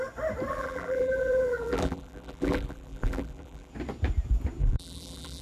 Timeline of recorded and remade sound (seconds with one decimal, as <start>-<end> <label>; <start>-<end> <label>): 0.0-0.5 recorded; 0.5-3.7 remade; 3.7-4.6 recorded; 4.6-5.4 remade